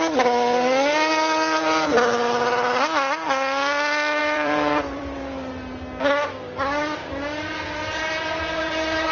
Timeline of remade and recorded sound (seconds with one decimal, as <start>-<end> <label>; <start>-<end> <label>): 0.0-4.2 recorded; 4.2-5.5 remade; 5.5-9.1 recorded